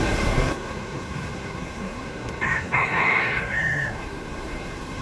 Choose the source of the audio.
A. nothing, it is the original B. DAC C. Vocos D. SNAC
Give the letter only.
D